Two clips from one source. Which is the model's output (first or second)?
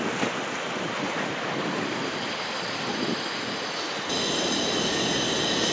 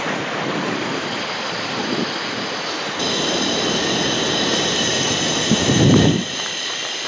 second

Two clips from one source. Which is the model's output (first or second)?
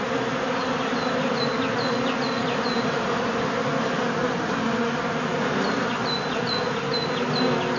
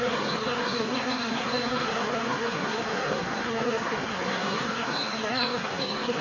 second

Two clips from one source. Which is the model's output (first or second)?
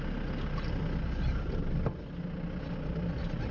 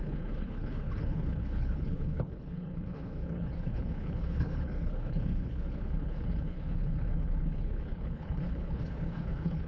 second